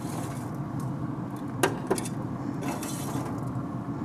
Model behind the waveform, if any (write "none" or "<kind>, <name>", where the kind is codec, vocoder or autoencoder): none